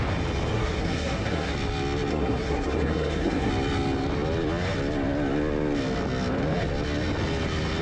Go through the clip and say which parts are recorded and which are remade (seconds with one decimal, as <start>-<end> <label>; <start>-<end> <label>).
0.0-0.5 recorded; 0.5-1.5 remade; 1.5-2.1 recorded; 2.1-3.5 remade; 3.5-7.8 recorded